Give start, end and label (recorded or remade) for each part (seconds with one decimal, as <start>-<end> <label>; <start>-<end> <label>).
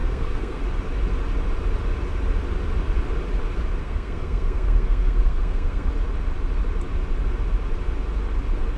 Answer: 0.0-0.6 remade; 0.6-3.8 recorded; 3.8-5.9 remade; 5.9-8.8 recorded